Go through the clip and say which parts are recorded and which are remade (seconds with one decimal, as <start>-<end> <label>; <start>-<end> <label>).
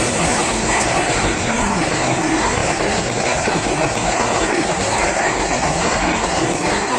0.0-7.0 remade